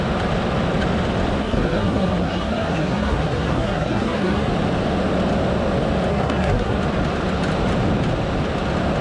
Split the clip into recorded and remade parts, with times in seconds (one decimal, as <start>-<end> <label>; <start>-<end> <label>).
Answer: 0.0-1.4 recorded; 1.4-4.5 remade; 4.5-6.1 recorded; 6.1-6.8 remade; 6.8-9.0 recorded